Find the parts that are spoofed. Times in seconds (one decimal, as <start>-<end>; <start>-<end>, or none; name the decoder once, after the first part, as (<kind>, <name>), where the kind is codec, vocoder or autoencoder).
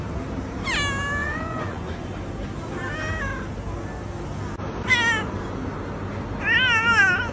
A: 1.2-2.1 (vocoder, Vocos)